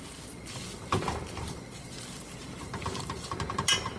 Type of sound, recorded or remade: recorded